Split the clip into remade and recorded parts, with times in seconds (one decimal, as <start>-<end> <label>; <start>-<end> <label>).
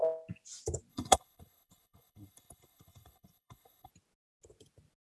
0.0-0.9 recorded; 0.9-3.9 remade; 3.9-5.0 recorded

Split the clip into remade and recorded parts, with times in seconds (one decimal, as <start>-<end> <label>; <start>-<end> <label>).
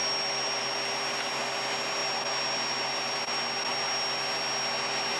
0.0-5.2 recorded